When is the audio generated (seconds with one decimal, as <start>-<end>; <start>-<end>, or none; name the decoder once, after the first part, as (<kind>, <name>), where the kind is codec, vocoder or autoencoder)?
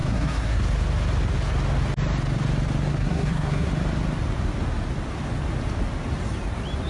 0.0-0.6 (codec, SNAC); 2.9-3.7